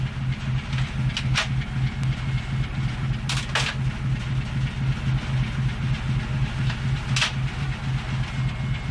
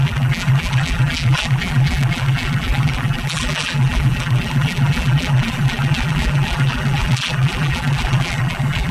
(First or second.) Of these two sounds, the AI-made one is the second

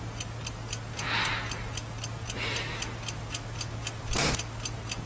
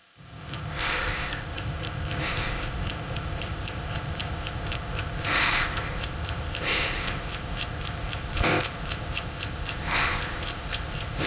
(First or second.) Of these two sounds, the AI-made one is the second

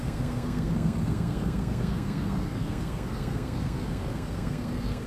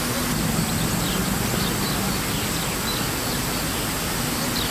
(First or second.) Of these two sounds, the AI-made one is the first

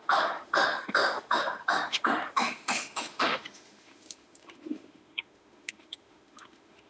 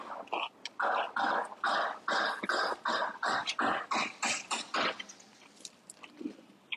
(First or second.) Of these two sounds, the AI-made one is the first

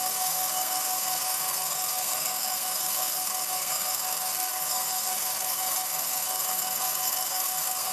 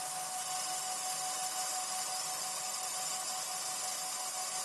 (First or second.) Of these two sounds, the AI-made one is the first